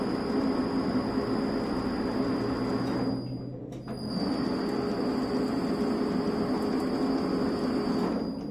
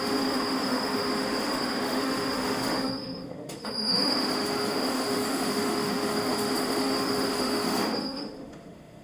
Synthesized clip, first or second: second